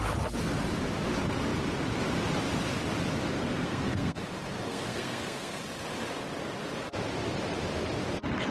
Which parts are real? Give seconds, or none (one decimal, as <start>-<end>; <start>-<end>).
0.0-3.6; 4.2-4.7; 5.6-8.5